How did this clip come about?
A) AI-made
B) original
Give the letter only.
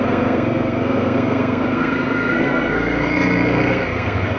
A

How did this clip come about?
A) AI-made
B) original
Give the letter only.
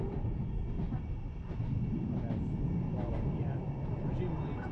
B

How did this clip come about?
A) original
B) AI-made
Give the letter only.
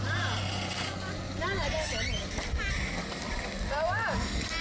A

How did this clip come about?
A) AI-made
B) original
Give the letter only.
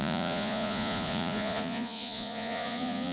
A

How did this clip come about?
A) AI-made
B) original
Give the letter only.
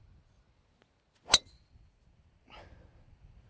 B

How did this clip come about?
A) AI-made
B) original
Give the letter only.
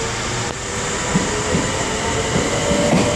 B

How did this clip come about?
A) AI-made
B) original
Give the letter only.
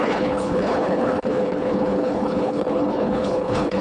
A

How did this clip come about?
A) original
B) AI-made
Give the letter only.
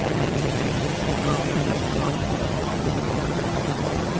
B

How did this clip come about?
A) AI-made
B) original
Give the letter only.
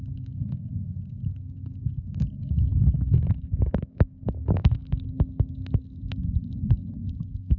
A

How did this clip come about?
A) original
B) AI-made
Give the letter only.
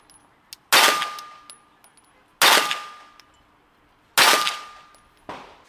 A